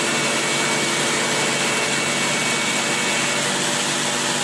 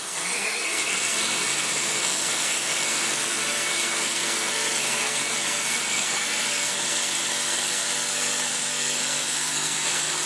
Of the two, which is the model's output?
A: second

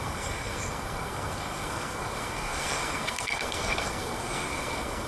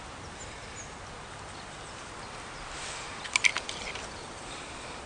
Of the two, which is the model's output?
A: first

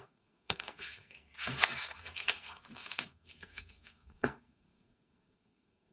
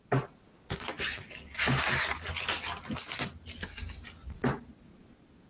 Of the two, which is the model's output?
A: first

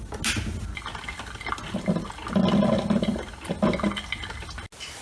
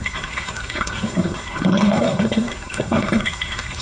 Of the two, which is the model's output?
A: second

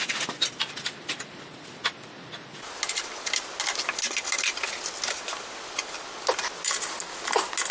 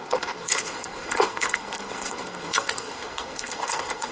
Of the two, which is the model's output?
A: second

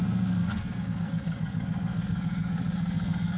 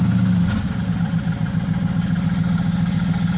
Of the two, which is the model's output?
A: first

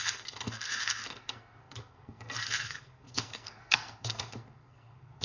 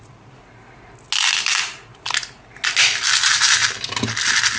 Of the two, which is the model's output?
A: first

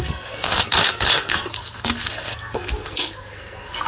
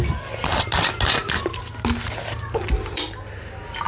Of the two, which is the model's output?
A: first